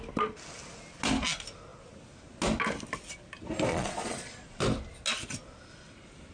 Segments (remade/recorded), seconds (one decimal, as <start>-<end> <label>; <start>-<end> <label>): 0.0-3.7 recorded; 3.7-4.6 remade; 4.6-6.3 recorded

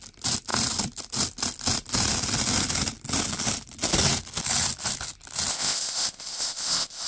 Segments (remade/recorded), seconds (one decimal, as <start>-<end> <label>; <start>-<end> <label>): 0.0-5.5 recorded; 5.5-7.1 remade